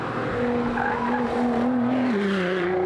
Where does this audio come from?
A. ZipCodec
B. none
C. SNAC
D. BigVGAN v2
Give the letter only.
B